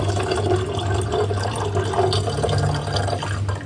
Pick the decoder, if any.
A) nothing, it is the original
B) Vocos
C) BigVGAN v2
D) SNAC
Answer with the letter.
A